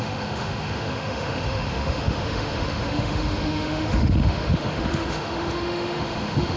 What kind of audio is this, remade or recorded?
remade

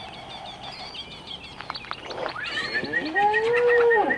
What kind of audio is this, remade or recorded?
recorded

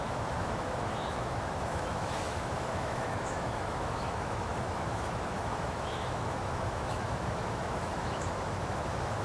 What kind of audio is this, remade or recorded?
remade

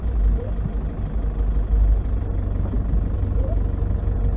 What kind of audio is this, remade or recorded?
recorded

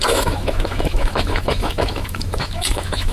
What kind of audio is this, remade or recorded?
remade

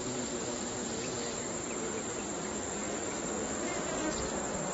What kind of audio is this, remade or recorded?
recorded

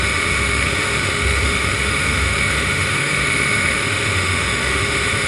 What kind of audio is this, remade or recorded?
remade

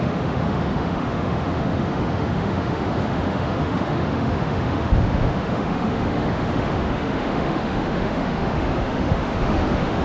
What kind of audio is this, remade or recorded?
remade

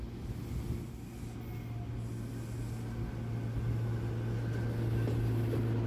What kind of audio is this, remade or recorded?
recorded